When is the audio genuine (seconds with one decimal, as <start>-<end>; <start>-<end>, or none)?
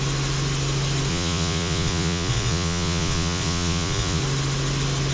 0.0-1.1; 4.2-5.1